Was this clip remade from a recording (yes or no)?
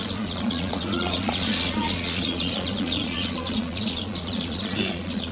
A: yes